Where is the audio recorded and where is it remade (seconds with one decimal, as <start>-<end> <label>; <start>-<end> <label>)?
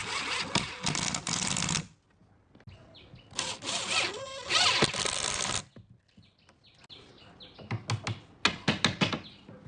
0.0-9.7 recorded